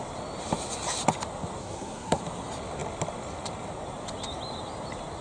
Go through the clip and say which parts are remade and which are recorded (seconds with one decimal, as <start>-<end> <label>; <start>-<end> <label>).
0.0-1.6 recorded; 1.6-2.2 remade; 2.2-5.2 recorded